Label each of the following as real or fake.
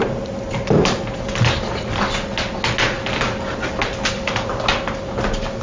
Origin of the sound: real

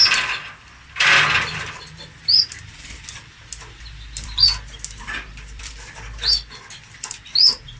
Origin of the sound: fake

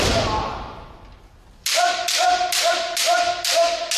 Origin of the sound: real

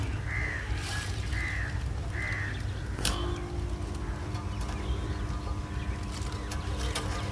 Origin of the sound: real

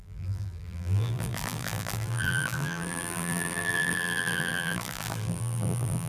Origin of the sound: fake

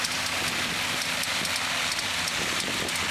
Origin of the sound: real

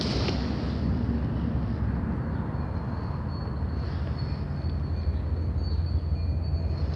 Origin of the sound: real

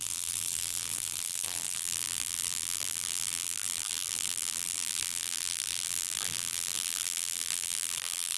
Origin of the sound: fake